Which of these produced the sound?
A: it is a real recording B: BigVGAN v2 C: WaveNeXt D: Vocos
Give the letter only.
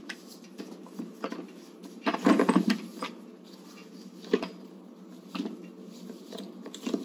A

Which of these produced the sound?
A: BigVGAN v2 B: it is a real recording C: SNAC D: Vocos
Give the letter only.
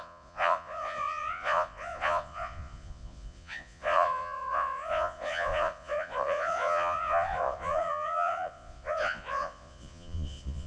D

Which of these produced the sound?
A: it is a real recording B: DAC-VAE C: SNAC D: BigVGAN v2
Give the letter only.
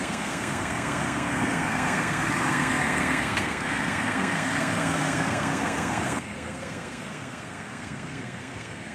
C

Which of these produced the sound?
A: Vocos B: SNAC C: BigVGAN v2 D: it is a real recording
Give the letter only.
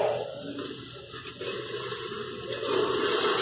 D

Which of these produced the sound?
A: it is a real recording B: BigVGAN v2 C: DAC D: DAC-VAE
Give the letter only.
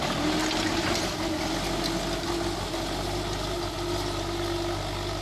A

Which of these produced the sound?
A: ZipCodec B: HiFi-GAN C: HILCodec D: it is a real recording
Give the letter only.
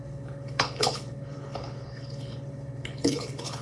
C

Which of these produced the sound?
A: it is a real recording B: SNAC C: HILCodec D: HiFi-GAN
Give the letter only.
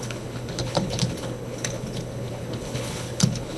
C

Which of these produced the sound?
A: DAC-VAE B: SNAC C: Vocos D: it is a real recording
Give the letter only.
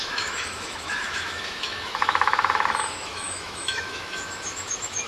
A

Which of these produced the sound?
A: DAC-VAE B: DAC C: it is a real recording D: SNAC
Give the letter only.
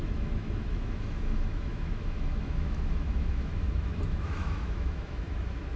A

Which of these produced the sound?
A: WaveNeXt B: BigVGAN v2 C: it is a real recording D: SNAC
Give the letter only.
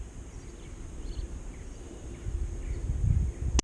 C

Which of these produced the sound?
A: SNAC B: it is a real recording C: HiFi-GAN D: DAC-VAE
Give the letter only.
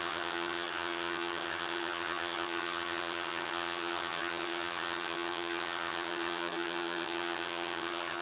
C